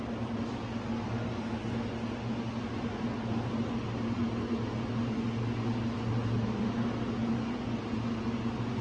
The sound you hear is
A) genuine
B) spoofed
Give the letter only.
A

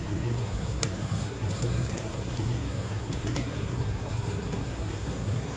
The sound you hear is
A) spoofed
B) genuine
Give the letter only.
A